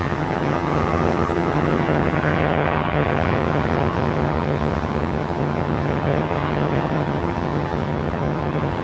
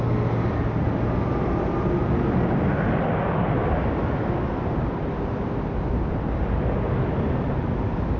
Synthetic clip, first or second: first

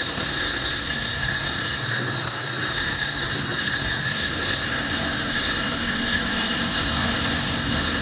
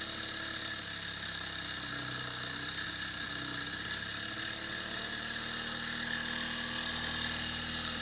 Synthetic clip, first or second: first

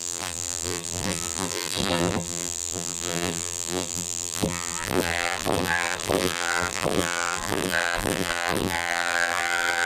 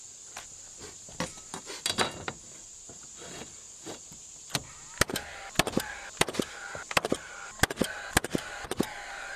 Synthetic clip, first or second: first